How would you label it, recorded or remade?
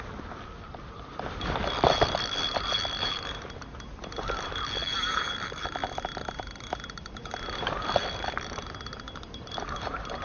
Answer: remade